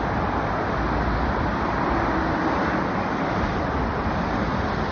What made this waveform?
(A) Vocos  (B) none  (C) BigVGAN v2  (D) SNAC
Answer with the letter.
B